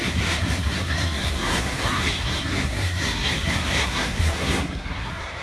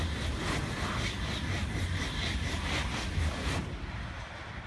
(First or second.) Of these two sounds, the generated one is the first